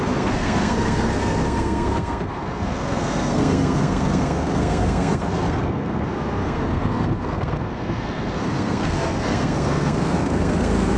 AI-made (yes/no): yes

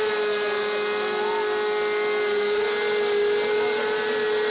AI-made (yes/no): no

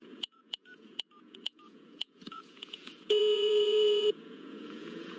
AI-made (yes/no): yes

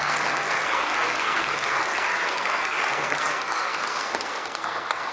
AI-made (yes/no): yes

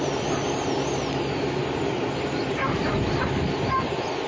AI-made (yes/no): no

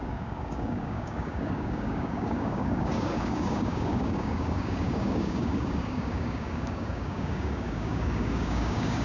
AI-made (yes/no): yes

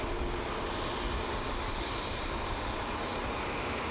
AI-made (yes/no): no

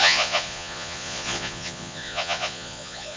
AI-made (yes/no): yes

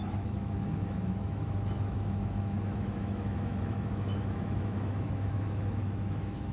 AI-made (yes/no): yes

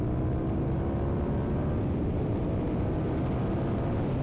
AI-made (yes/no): no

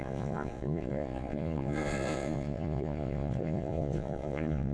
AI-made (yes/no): yes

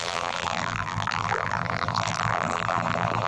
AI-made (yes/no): yes